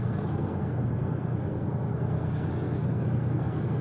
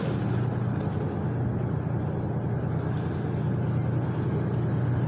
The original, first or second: second